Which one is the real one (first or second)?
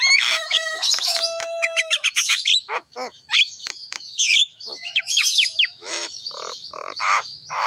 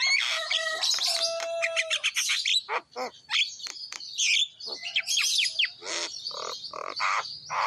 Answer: second